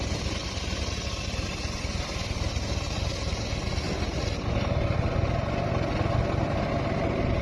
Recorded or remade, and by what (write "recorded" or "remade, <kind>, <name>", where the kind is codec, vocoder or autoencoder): recorded